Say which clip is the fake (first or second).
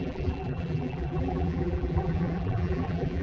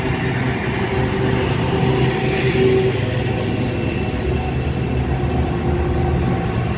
first